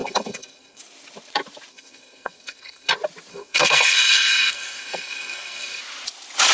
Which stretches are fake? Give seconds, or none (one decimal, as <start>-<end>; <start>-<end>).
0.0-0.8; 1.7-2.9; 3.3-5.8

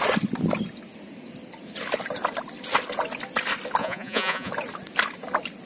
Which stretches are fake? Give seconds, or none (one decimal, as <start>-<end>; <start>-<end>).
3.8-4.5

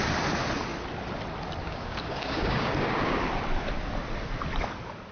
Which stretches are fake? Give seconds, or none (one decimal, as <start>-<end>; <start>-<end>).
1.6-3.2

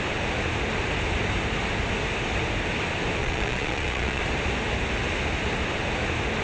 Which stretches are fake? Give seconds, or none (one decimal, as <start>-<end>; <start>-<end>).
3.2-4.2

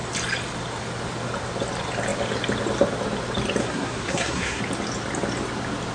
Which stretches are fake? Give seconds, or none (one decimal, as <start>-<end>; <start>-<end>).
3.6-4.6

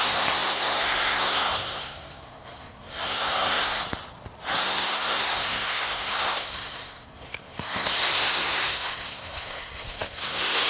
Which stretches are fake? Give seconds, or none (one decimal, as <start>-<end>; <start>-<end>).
0.0-3.8; 4.6-10.7